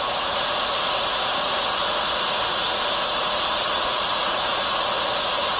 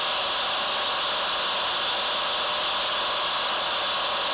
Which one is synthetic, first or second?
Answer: first